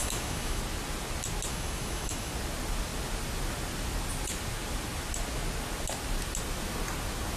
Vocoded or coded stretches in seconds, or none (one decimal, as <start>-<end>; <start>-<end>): 0.0-0.6; 1.5-2.3